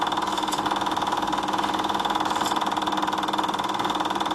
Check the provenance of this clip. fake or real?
real